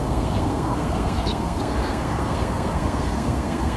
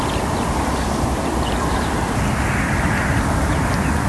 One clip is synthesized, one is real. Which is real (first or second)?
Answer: second